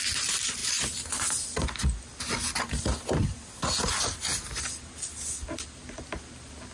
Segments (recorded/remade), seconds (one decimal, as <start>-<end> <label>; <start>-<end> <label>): 0.0-6.7 recorded